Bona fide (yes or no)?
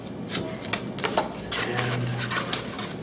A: yes